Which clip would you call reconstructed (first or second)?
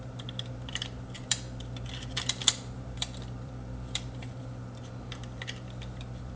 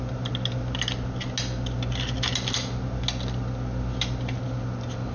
first